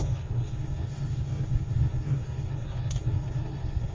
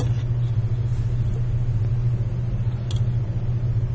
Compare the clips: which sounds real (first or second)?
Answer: second